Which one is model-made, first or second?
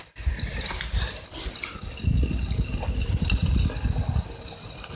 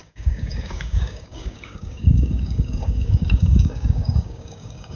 second